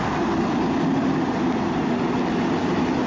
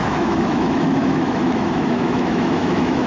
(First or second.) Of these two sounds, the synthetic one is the second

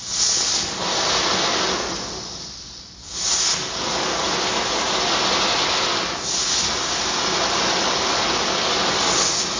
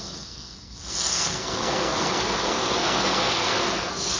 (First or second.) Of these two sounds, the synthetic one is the second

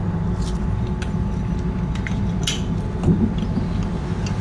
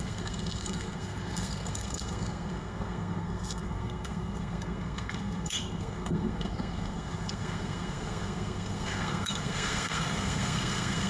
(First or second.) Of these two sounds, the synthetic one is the second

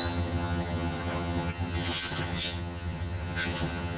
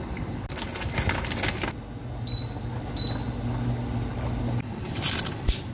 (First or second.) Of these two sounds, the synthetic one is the first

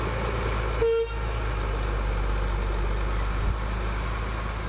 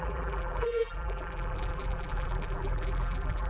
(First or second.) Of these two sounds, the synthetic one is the second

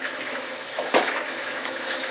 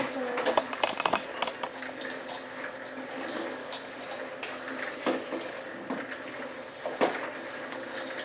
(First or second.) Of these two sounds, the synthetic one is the first